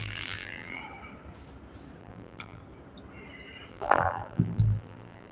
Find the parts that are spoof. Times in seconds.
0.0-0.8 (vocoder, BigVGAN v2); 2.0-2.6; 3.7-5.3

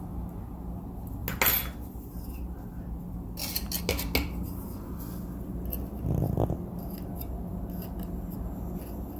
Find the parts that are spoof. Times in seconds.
none

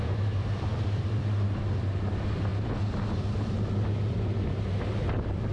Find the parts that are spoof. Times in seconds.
0.0-2.5 (vocoder, BigVGAN v2); 3.2-5.5